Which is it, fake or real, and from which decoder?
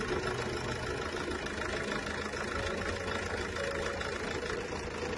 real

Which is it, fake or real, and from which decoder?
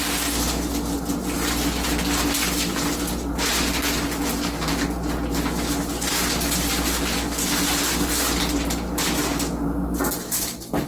real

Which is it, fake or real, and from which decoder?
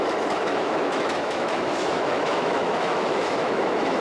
fake, autoencoder, DAC-VAE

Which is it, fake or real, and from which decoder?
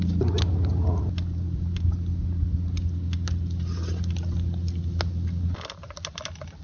real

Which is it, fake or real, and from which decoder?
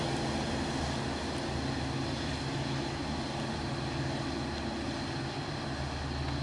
real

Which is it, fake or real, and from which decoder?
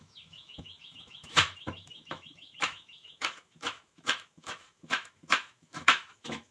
fake, autoencoder, DAC-VAE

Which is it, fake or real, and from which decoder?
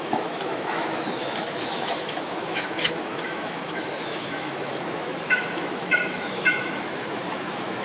fake, autoencoder, DAC-VAE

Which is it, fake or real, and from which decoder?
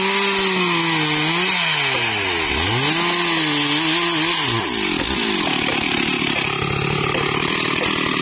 real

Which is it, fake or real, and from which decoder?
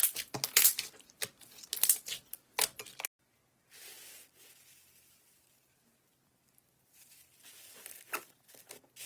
real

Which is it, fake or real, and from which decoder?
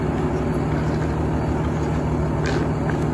real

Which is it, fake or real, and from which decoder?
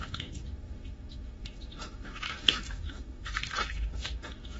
fake, autoencoder, DAC-VAE